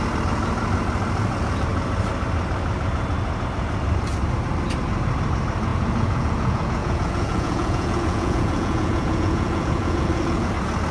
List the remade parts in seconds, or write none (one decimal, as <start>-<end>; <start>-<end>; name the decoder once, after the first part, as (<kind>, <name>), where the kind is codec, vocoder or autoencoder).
5.7-10.5 (vocoder, Vocos)